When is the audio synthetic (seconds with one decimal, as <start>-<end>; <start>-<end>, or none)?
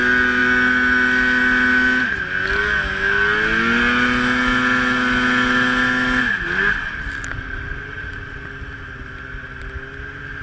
none